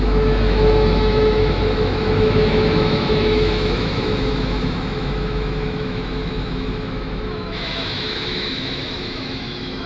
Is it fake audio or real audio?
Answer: fake